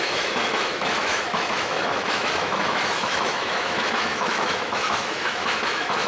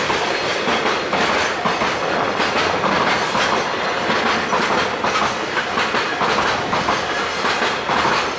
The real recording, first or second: second